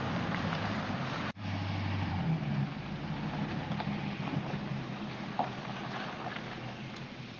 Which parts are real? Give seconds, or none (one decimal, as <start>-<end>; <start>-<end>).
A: none